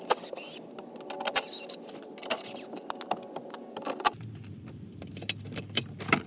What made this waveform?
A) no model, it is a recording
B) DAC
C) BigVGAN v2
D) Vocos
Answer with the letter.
A